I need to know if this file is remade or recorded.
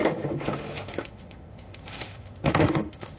remade